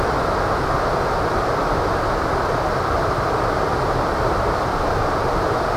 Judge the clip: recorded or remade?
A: recorded